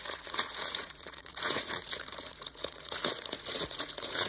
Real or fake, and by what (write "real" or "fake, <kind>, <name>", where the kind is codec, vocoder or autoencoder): fake, vocoder, Vocos